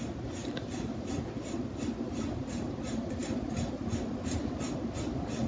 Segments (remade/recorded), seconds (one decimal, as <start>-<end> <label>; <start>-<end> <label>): 0.0-5.5 recorded